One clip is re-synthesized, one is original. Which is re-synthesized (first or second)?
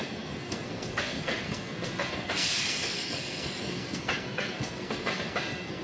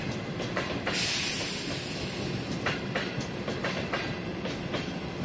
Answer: first